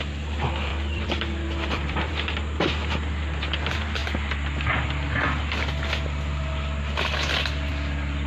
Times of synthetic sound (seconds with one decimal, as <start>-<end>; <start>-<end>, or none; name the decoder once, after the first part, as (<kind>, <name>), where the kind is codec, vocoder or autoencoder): 0.7-2.1 (vocoder, BigVGAN v2)